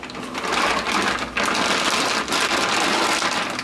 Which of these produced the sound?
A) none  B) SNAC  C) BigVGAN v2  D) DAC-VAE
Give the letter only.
A